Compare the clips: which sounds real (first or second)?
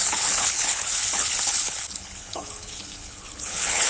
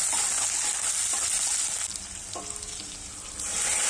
second